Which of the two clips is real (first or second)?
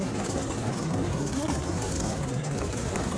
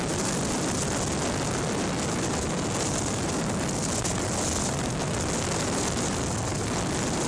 second